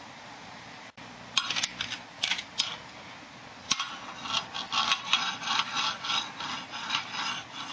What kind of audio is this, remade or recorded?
recorded